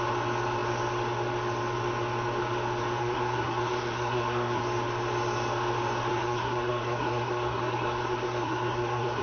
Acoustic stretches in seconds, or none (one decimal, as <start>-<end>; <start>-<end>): 0.0-3.0; 4.6-6.1